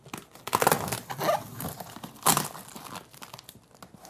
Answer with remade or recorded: recorded